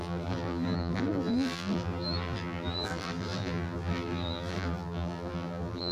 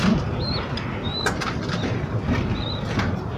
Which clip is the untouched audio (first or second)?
second